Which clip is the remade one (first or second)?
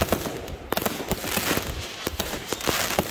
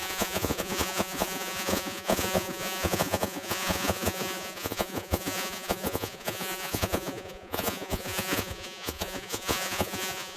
second